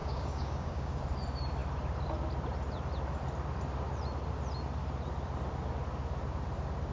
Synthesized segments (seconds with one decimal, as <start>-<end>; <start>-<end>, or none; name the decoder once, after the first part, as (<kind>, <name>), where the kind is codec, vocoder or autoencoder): 0.0-1.0 (codec, DAC)